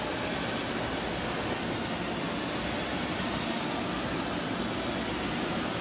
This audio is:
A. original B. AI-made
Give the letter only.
A